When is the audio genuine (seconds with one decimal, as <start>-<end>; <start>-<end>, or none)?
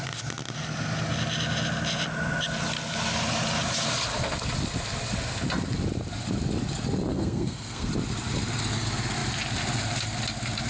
0.0-7.1; 7.9-10.7